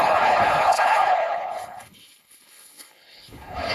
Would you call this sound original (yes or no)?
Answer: no